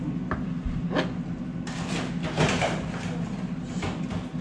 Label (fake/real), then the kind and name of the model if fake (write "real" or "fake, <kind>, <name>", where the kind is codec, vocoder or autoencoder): real